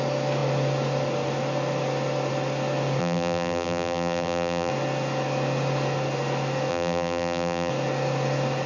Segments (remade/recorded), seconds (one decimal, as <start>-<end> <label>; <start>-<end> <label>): 0.0-3.0 recorded; 3.0-4.7 remade; 4.7-6.7 recorded; 6.7-7.7 remade; 7.7-8.7 recorded